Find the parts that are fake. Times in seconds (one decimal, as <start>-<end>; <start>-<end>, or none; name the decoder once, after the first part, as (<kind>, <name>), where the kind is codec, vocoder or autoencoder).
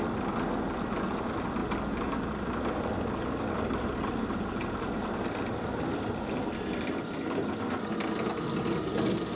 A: none